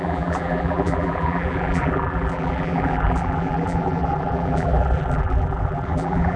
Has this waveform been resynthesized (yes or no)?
yes